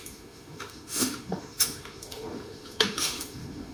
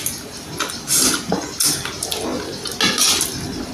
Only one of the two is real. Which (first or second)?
second